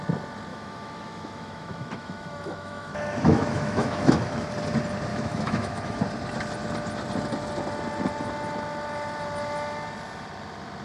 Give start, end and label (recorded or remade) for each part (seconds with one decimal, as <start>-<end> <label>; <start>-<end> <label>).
0.0-0.5 recorded; 0.5-4.5 remade; 4.5-5.1 recorded; 5.1-6.0 remade; 6.0-10.8 recorded